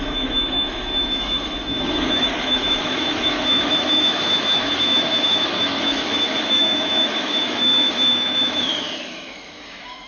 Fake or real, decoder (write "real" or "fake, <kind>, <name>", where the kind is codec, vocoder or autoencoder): fake, autoencoder, DAC-VAE